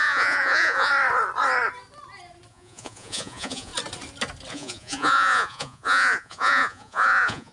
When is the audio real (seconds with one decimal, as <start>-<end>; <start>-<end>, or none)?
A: 0.9-2.5; 3.7-4.5